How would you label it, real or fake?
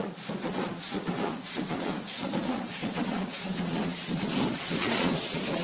fake